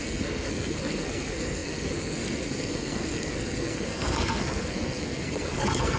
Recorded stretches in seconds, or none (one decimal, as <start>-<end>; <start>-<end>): none